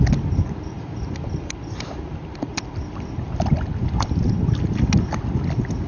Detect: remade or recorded recorded